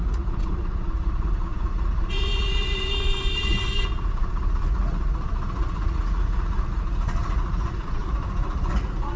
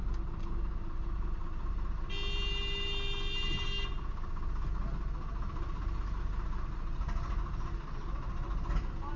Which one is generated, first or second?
first